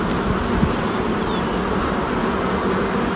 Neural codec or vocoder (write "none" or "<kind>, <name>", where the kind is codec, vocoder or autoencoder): none